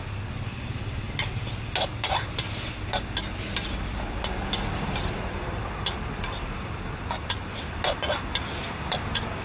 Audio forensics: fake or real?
real